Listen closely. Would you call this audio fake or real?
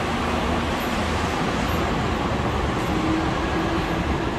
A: real